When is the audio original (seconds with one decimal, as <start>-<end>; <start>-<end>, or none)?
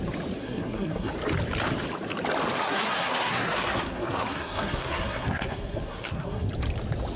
0.0-0.4; 1.1-2.6; 6.5-7.2